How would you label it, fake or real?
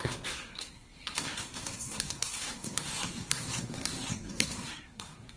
fake